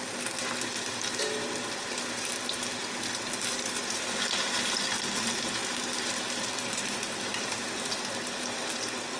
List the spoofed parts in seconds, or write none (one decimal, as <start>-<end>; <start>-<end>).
0.0-2.3; 2.8-5.6; 6.1-7.3; 8.0-9.2